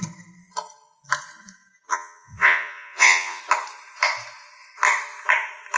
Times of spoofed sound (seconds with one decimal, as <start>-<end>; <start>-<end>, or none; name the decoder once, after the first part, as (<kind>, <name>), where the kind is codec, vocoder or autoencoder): 1.9-3.4 (vocoder, Vocos)